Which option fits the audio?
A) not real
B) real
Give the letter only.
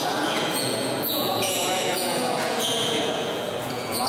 A